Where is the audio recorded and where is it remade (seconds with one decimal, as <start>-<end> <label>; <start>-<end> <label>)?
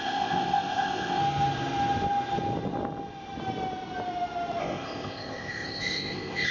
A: 0.0-1.2 remade; 1.2-4.6 recorded; 4.6-6.5 remade